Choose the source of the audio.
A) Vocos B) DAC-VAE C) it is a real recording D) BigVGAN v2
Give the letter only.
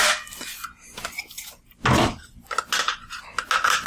C